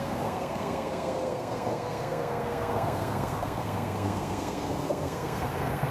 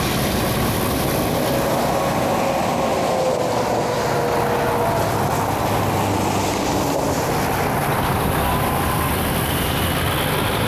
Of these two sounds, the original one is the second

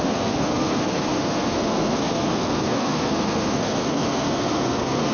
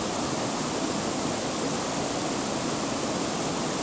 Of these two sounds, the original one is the second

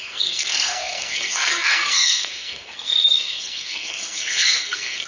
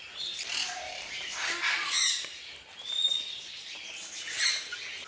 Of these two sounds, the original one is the second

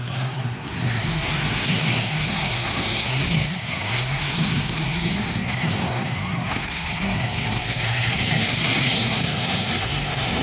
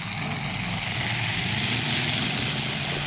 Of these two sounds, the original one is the second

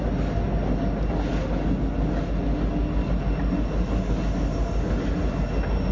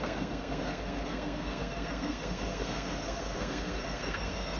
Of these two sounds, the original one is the first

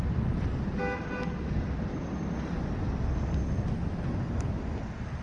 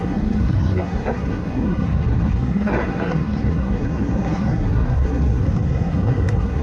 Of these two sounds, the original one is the first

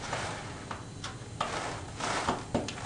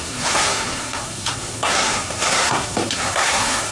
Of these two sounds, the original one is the first